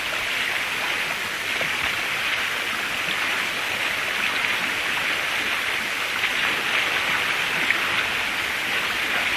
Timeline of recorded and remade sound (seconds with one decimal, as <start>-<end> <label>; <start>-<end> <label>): 0.0-9.4 recorded

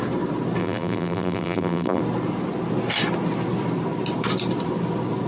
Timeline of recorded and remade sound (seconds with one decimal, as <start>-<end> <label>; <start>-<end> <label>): 0.0-0.6 recorded; 0.6-2.0 remade; 2.0-5.3 recorded

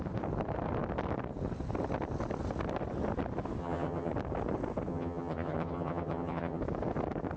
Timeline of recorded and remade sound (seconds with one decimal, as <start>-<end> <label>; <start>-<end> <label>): 0.0-3.6 recorded; 3.6-4.1 remade; 4.1-4.9 recorded; 4.9-6.6 remade; 6.6-7.4 recorded

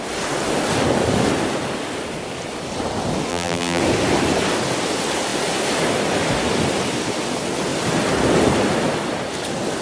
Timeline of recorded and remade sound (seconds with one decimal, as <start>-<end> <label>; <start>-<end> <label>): 0.0-3.3 recorded; 3.3-3.8 remade; 3.8-9.8 recorded